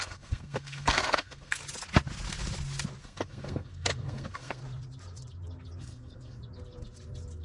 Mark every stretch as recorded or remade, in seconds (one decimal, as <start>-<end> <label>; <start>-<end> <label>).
0.0-1.6 remade; 1.6-3.0 recorded; 3.0-4.6 remade; 4.6-5.8 recorded; 5.8-6.4 remade; 6.4-7.4 recorded